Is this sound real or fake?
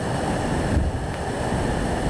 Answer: fake